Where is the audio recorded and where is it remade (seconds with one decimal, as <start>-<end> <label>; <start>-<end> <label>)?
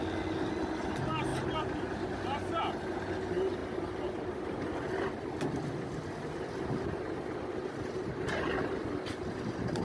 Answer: 0.0-9.8 recorded